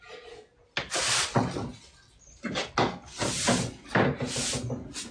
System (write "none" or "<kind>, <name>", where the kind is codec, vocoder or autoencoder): none